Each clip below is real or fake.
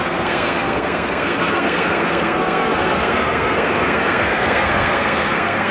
fake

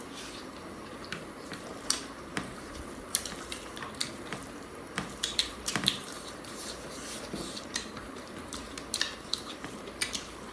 fake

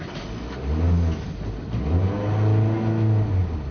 real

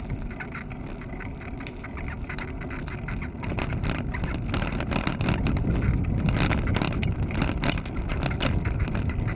real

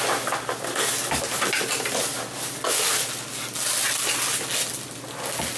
real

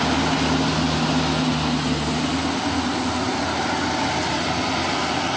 real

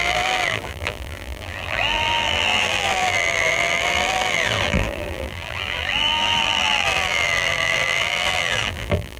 fake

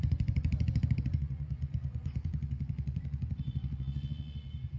fake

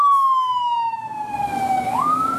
fake